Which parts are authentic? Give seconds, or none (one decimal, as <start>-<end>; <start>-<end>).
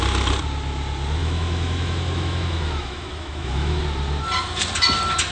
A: 0.0-1.2; 3.8-5.3